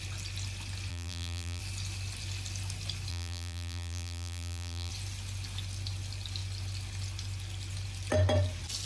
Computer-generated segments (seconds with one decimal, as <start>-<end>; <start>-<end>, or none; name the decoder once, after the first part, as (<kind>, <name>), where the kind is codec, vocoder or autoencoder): 0.9-1.6 (vocoder, BigVGAN v2); 3.1-4.9